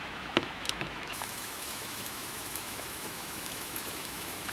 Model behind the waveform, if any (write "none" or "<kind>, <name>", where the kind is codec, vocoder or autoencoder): autoencoder, DAC-VAE